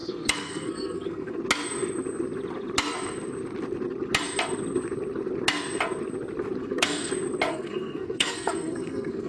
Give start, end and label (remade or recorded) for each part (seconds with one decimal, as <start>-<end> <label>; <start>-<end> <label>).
0.0-1.4 remade; 1.4-6.6 recorded; 6.6-7.1 remade; 7.1-7.5 recorded; 7.5-9.3 remade